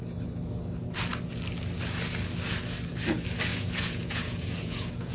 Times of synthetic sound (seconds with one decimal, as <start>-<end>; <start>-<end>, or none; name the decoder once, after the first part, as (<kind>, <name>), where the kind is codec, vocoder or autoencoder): 3.5-5.1 (vocoder, Vocos)